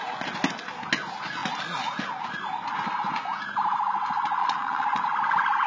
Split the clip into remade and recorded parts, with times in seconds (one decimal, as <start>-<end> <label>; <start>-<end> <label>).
0.0-4.4 recorded; 4.4-5.0 remade; 5.0-5.7 recorded